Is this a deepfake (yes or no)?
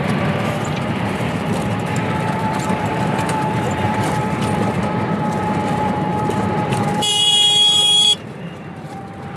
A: yes